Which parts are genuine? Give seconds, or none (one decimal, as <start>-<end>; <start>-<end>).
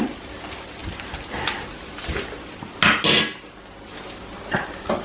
0.0-5.0